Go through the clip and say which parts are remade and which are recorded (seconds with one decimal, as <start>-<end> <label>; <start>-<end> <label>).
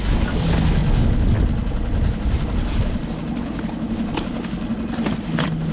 0.0-5.7 recorded